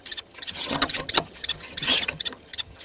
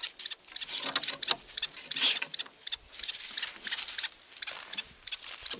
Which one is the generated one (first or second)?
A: first